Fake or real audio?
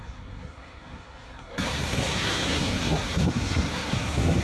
fake